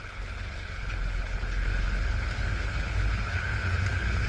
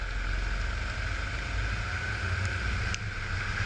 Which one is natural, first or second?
second